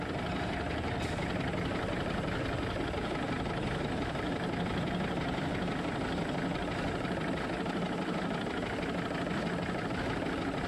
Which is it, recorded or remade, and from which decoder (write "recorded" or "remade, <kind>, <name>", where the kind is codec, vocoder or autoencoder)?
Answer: recorded